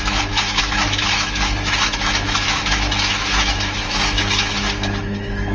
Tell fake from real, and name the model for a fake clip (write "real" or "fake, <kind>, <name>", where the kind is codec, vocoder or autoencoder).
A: fake, autoencoder, DAC-VAE